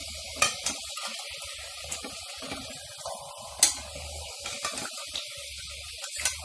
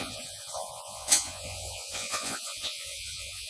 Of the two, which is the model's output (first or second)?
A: second